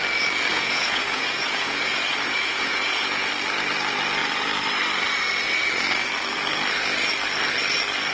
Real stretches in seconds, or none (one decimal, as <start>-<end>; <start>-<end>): 0.0-0.5; 3.3-8.1